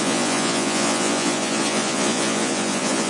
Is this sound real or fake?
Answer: fake